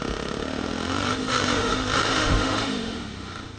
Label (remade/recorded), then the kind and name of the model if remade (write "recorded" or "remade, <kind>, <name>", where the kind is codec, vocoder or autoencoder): remade, autoencoder, DAC-VAE